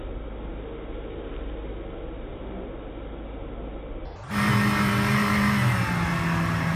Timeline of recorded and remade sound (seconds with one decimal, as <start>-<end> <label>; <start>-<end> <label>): 0.0-6.8 recorded